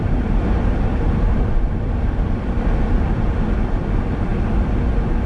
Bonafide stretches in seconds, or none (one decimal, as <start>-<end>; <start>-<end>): 4.3-5.3